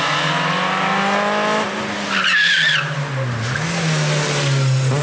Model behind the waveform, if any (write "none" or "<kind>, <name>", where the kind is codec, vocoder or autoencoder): none